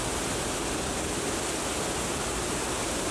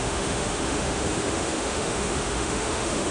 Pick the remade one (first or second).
second